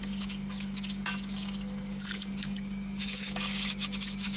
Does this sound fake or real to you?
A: fake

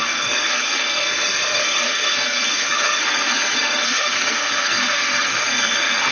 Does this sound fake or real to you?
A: fake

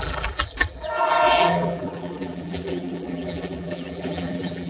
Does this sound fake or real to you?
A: fake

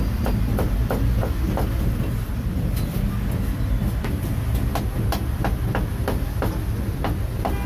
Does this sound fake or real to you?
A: real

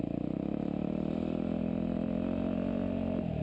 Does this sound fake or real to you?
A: real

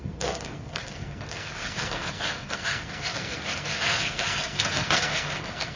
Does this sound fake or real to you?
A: fake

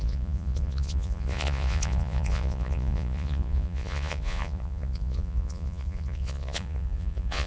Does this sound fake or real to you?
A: fake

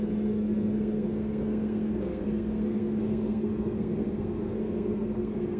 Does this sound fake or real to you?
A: fake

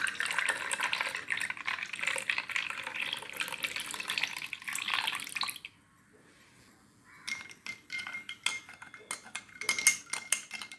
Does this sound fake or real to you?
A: real